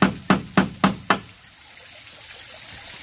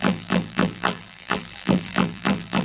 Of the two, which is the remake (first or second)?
second